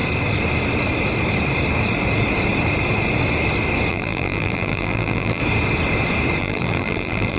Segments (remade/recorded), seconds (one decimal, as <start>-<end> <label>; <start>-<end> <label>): 0.0-3.9 recorded; 3.9-5.4 remade; 5.4-6.4 recorded; 6.4-7.4 remade